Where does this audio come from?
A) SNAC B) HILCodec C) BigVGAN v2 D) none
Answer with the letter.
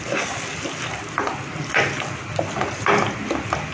D